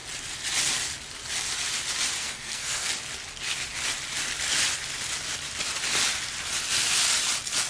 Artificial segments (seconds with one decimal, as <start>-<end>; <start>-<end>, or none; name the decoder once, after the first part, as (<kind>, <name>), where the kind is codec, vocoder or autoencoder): 2.2-2.9 (codec, SNAC)